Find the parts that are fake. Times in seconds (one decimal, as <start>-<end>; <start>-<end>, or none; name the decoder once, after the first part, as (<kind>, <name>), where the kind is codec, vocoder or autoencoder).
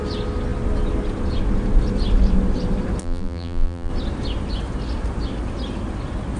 3.0-3.9 (vocoder, BigVGAN v2)